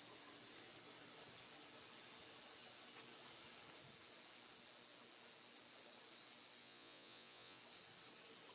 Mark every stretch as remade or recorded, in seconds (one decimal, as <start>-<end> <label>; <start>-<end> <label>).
0.0-6.6 recorded; 6.6-7.6 remade; 7.6-8.5 recorded